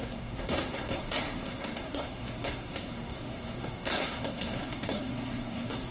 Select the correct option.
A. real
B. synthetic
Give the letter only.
B